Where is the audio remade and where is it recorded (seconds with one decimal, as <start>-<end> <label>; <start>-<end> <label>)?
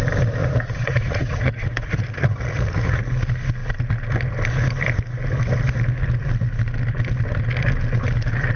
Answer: 0.0-0.4 recorded; 0.4-3.0 remade; 3.0-8.6 recorded